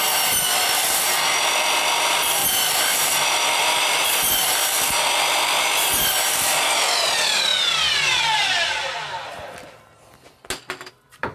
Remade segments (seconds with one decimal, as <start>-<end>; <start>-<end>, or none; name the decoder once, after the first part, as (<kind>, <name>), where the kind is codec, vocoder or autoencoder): 0.0-7.5 (vocoder, BigVGAN v2); 10.9-11.3